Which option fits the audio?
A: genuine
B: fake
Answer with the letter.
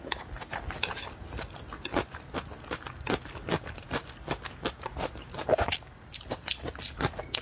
A